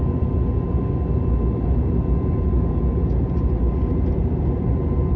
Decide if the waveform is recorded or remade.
recorded